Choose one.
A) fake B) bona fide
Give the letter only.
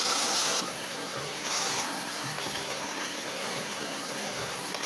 A